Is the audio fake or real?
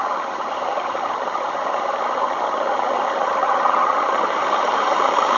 fake